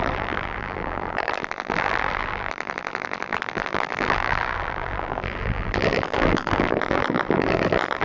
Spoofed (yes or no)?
yes